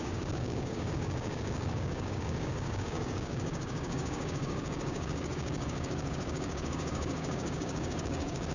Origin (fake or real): fake